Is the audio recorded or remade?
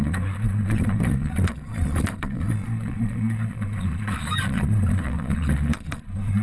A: remade